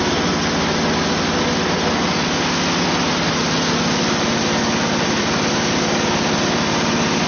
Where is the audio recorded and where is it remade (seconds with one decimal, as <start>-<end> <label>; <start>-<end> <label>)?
0.0-7.3 recorded